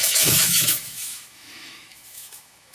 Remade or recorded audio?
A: remade